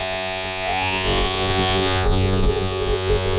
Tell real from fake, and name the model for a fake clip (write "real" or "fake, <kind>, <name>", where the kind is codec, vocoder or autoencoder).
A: fake, vocoder, Vocos